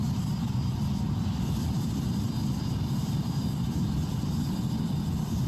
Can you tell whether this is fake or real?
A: real